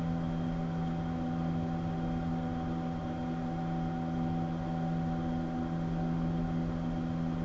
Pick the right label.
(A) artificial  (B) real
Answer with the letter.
B